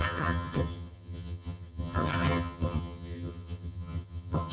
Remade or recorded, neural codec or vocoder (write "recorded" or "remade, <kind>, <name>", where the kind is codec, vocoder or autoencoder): remade, vocoder, HiFi-GAN